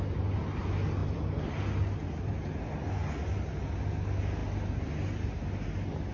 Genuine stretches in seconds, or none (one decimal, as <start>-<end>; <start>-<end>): 0.0-6.1